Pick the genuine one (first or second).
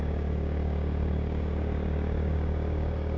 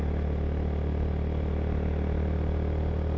second